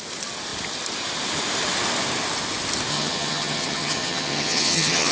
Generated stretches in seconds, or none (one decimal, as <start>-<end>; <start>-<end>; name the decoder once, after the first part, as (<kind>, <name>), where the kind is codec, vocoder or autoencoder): 2.9-5.1 (vocoder, HiFi-GAN)